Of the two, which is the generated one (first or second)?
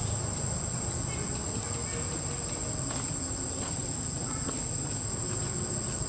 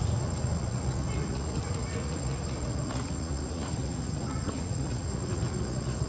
second